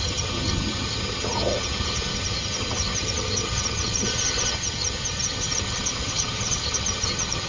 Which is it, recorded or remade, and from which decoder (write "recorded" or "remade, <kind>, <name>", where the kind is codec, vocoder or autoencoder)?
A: remade, vocoder, HiFi-GAN